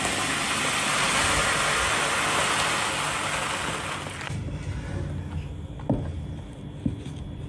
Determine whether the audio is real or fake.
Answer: real